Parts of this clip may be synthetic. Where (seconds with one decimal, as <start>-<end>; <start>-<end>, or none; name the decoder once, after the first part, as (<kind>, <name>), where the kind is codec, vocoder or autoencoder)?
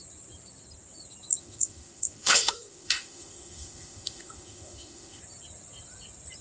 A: 1.4-5.2 (autoencoder, DAC-VAE)